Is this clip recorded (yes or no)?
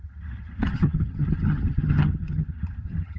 no